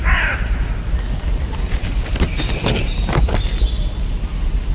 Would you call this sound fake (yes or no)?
no